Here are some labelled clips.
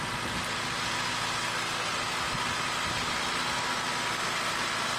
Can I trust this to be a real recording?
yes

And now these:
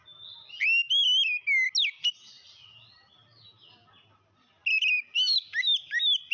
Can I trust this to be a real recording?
yes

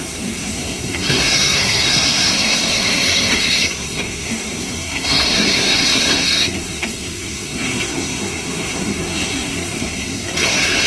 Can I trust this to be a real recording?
no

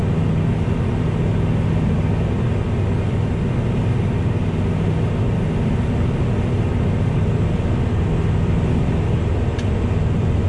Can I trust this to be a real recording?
yes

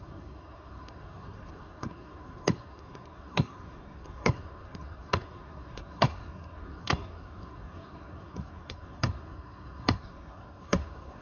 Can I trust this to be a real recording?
no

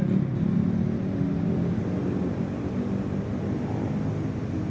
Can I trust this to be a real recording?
yes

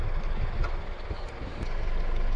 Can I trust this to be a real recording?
yes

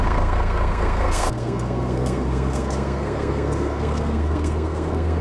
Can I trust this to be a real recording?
no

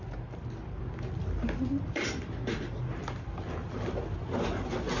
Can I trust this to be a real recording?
yes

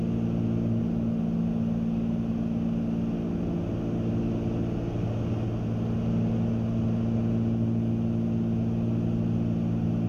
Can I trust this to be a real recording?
yes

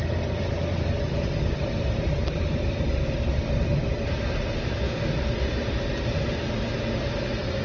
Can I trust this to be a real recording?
yes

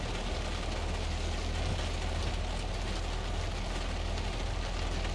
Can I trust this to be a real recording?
yes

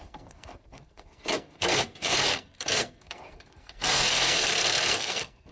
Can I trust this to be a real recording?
no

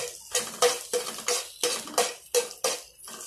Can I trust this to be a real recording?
yes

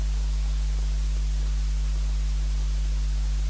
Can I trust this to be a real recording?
yes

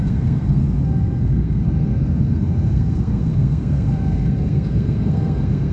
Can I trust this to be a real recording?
no